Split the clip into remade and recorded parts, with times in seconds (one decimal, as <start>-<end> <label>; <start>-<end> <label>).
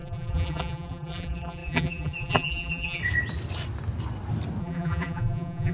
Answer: 0.0-3.0 remade; 3.0-4.6 recorded; 4.6-5.7 remade